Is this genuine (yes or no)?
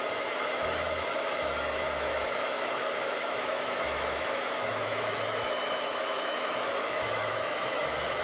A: no